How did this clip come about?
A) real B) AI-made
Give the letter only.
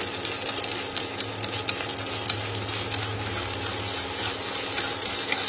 A